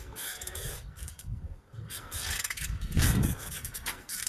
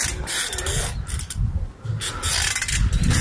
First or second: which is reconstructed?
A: first